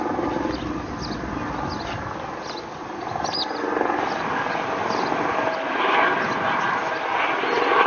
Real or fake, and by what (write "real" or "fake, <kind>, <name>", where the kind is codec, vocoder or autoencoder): real